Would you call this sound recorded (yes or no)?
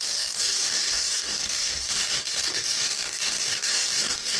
no